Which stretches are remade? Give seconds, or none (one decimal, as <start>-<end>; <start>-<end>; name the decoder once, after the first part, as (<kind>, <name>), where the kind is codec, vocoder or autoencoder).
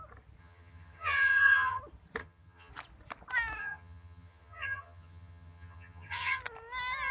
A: 0.4-1.8 (vocoder, HiFi-GAN); 2.2-2.7; 3.6-6.4